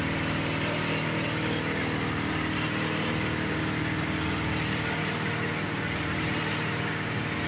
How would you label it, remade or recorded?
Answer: remade